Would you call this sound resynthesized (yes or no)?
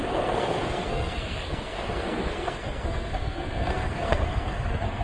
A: yes